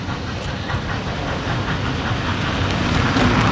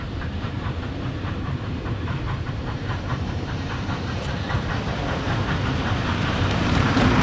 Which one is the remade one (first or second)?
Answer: second